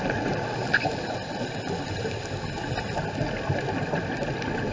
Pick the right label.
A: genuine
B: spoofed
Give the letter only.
A